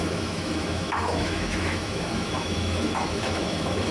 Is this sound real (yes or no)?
no